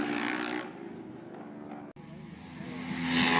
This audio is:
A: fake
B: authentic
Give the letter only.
B